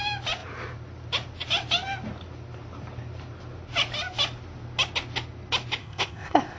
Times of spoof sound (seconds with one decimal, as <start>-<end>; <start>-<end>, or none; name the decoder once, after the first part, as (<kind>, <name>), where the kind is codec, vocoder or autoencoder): 5.8-6.6 (codec, ZipCodec)